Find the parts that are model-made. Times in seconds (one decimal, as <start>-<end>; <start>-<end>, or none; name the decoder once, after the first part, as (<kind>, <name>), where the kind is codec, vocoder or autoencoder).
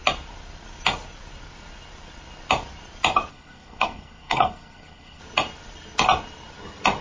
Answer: 3.3-5.2 (codec, SNAC)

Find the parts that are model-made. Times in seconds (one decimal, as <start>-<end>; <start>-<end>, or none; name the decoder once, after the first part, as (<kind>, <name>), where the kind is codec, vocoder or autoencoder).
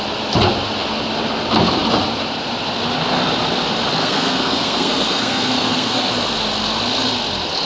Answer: 4.0-6.1 (codec, SNAC)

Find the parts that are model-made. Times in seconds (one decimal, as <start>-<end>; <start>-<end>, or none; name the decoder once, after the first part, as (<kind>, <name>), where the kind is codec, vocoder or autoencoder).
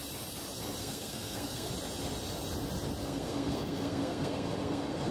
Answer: 0.8-1.7 (codec, SNAC); 3.0-5.1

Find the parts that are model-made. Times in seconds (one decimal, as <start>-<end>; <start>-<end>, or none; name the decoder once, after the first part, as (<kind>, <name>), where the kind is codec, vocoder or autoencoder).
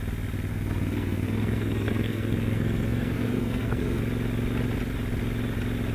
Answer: 0.5-4.0 (codec, SNAC)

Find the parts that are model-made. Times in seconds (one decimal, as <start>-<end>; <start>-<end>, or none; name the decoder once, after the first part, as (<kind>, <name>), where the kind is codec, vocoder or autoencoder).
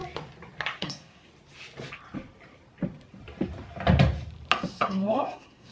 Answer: 0.8-1.3 (codec, SNAC); 4.7-5.7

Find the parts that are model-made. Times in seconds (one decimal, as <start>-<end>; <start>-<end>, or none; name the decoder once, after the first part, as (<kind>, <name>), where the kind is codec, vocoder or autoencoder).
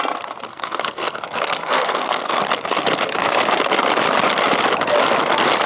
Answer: 0.5-2.4 (codec, SNAC)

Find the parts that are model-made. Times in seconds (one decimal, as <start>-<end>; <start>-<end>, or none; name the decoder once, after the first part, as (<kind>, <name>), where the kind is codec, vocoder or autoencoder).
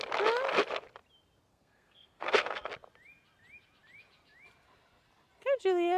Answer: 1.5-2.7 (codec, SNAC)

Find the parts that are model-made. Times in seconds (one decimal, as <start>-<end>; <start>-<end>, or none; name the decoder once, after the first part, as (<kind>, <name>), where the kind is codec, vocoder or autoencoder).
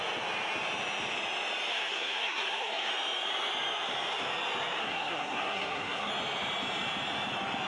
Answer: 1.7-2.9 (codec, SNAC); 4.8-6.1